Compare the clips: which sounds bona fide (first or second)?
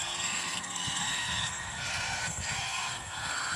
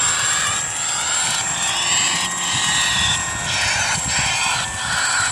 second